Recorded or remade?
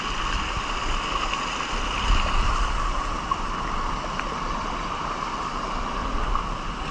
recorded